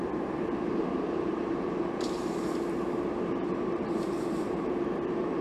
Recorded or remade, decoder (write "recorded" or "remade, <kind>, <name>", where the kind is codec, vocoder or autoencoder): remade, vocoder, BigVGAN v2